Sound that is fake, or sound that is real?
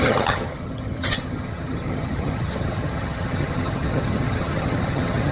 fake